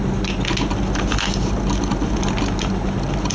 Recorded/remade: recorded